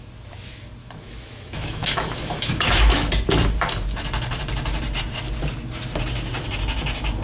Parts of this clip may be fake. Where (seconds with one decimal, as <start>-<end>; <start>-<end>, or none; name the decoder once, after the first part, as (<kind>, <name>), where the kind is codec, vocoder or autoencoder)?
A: 0.8-3.1 (autoencoder, DAC-VAE)